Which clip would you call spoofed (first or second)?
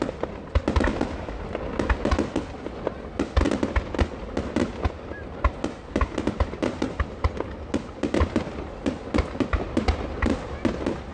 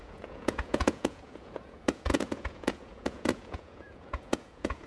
second